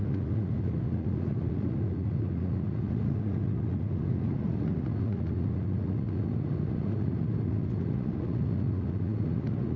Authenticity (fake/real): fake